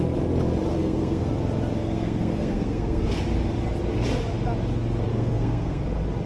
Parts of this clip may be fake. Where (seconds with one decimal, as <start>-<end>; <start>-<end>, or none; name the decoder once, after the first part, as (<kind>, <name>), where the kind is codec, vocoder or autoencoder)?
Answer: 0.7-1.3 (codec, SNAC); 1.8-3.0; 5.1-5.8